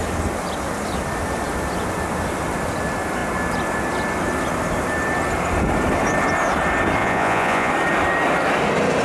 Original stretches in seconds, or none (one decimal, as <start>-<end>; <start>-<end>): 0.0-7.0; 7.7-9.0